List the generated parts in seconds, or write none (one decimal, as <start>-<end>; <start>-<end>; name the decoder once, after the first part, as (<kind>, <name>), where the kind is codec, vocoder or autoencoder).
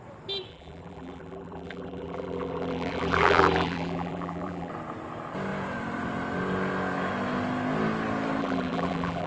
0.5-4.7 (vocoder, BigVGAN v2); 8.4-9.3